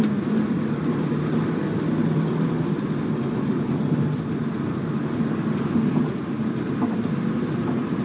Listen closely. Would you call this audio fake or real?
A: real